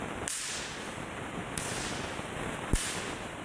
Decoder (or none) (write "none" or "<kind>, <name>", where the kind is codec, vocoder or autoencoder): none